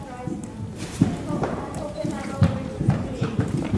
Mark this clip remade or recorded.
remade